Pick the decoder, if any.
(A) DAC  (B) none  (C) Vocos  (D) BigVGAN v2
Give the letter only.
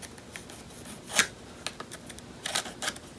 B